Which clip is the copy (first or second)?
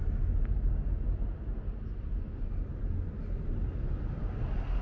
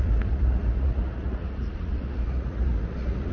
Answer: second